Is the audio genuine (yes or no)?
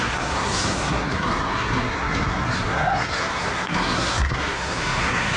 no